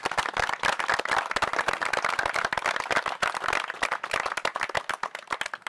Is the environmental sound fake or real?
real